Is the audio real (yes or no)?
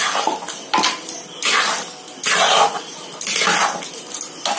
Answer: yes